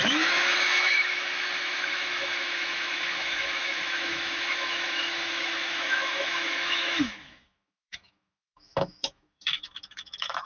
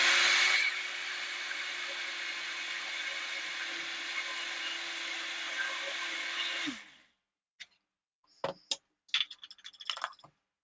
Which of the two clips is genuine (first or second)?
second